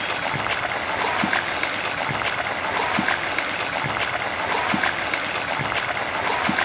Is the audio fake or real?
real